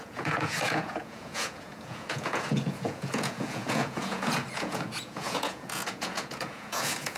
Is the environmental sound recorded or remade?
remade